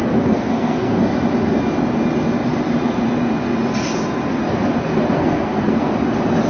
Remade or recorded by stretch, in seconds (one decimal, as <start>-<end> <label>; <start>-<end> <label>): 0.0-1.0 remade; 1.0-5.1 recorded; 5.1-5.9 remade; 5.9-6.5 recorded